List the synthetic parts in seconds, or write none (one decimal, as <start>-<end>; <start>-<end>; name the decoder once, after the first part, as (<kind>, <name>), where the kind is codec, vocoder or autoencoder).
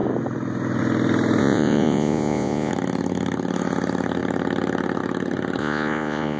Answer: 1.4-2.7 (vocoder, Vocos); 5.6-6.4